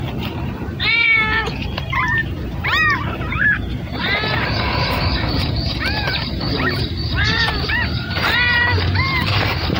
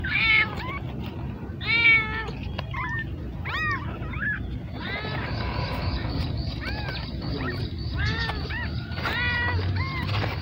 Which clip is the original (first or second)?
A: second